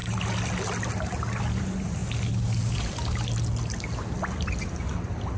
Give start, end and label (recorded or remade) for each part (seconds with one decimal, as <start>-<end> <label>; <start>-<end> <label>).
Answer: 0.0-5.4 recorded